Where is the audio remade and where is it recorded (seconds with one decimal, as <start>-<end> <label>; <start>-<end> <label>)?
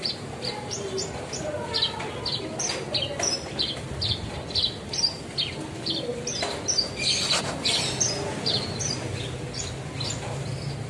0.0-10.9 recorded